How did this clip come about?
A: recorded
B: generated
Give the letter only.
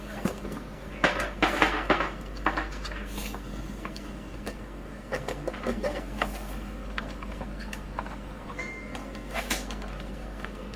B